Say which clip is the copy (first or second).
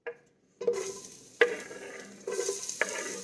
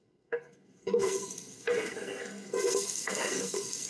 second